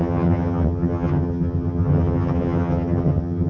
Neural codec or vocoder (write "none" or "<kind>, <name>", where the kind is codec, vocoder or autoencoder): vocoder, HiFi-GAN